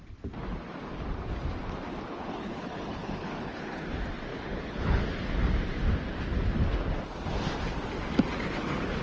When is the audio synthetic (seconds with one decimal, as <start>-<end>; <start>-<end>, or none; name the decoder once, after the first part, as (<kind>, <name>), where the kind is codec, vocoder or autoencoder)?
2.1-3.8 (codec, HILCodec); 4.3-5.0